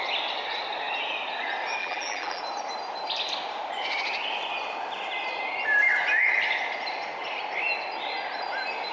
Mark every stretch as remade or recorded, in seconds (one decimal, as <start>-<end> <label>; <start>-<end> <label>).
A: 0.0-1.8 recorded; 1.8-2.4 remade; 2.4-8.9 recorded